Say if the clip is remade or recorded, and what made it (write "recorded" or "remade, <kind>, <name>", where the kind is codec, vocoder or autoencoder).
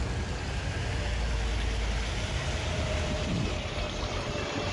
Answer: recorded